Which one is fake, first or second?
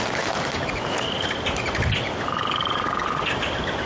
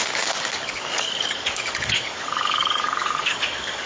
second